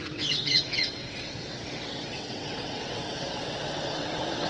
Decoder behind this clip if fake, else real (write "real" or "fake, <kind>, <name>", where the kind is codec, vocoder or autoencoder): fake, vocoder, WaveNeXt